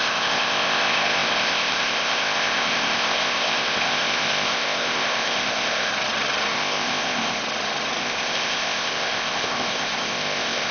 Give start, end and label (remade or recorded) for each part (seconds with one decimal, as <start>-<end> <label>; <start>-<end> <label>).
0.0-5.9 remade; 5.9-6.5 recorded; 6.5-7.4 remade; 7.4-8.0 recorded; 8.0-10.7 remade